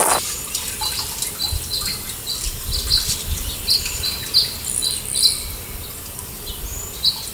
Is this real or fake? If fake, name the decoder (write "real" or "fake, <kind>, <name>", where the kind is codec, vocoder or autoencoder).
real